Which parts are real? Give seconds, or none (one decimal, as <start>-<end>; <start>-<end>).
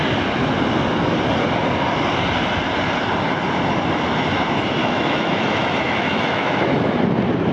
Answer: 0.0-4.8; 7.0-7.5